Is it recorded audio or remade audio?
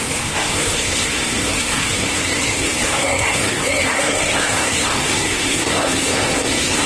remade